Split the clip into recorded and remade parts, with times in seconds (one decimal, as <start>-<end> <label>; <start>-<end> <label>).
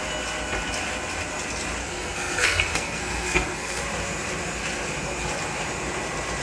0.0-1.8 recorded; 1.8-3.8 remade; 3.8-6.4 recorded